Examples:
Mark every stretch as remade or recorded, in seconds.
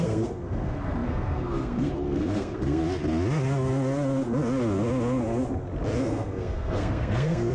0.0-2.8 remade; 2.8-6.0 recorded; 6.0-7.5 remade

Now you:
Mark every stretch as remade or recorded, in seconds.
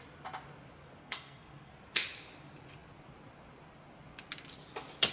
0.0-1.0 recorded; 1.0-1.7 remade; 1.7-5.1 recorded